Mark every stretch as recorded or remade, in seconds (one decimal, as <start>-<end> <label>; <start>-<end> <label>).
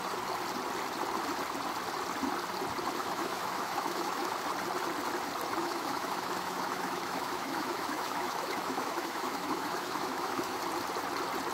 0.0-3.0 recorded; 3.0-4.3 remade; 4.3-5.6 recorded; 5.6-10.6 remade; 10.6-11.5 recorded